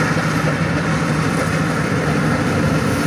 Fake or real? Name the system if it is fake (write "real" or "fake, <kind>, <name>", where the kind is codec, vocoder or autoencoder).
fake, vocoder, BigVGAN v2